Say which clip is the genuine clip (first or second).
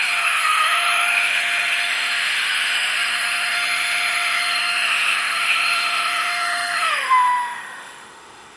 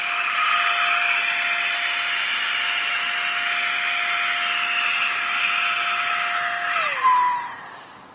second